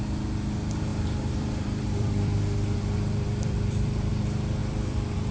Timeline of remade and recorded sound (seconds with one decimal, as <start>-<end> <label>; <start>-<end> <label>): 0.0-0.9 recorded; 0.9-4.1 remade; 4.1-4.6 recorded; 4.6-5.3 remade